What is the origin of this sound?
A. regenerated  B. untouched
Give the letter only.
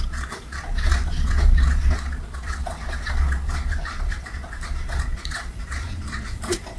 A